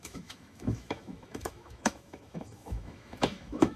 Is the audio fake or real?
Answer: fake